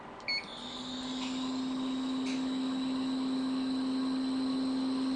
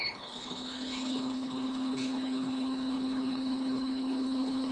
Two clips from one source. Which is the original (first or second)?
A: first